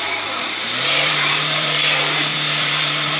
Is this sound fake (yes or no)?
yes